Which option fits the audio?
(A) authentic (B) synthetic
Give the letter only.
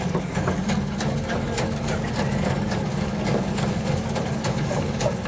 B